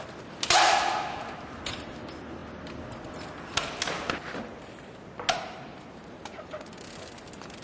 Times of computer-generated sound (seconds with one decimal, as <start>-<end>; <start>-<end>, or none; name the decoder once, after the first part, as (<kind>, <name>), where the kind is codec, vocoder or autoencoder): none